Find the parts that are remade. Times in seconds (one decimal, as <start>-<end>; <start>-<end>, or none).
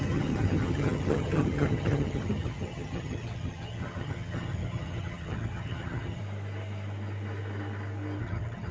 0.0-6.2; 8.2-8.7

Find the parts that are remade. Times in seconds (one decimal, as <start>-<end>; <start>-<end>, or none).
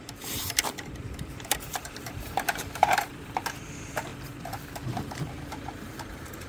0.0-4.1; 5.1-6.5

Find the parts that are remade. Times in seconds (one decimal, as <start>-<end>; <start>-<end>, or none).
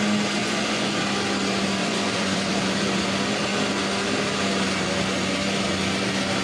0.4-1.0; 1.8-2.5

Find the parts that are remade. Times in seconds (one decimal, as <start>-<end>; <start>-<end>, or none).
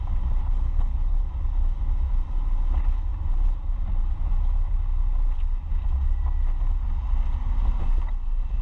0.4-1.2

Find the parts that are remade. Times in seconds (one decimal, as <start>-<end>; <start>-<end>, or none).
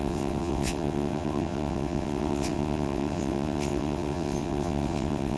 0.0-5.4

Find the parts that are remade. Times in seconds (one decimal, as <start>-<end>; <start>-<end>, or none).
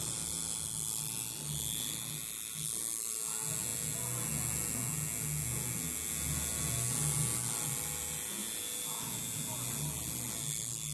none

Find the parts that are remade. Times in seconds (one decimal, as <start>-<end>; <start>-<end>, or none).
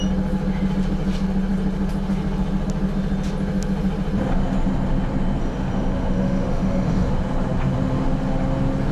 5.4-7.1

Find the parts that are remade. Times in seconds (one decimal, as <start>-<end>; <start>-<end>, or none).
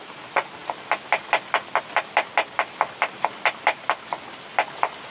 none